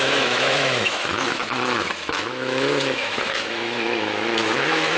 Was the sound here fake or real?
fake